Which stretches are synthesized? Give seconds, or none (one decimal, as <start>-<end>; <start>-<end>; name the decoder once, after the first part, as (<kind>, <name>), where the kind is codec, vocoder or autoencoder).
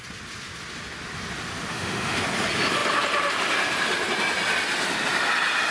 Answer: 1.7-2.2 (autoencoder, DAC-VAE)